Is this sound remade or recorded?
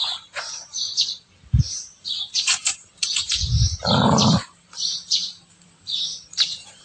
remade